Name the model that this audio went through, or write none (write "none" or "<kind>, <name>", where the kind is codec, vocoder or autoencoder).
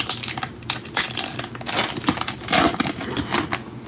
none